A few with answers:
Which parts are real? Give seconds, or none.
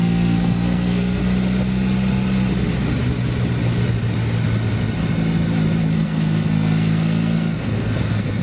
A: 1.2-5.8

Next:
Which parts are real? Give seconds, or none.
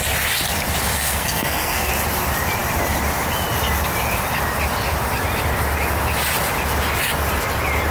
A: 0.0-0.9; 1.9-7.9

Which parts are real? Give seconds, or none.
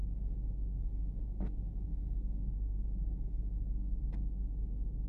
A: 0.0-1.9; 4.0-5.1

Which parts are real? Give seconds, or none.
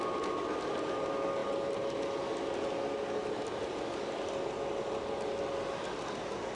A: 0.0-6.6